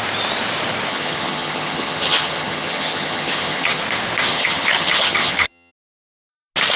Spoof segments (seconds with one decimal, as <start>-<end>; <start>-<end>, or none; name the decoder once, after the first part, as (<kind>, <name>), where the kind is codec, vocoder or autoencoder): 0.9-3.8 (vocoder, HiFi-GAN); 4.3-5.7